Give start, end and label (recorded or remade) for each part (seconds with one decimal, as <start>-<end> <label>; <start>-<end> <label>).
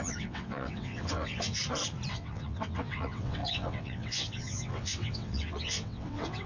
0.0-1.6 remade; 1.6-2.1 recorded; 2.1-6.5 remade